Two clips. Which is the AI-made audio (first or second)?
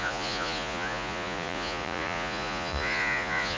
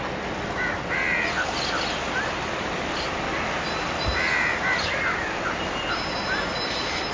first